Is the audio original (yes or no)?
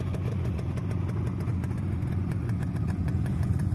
no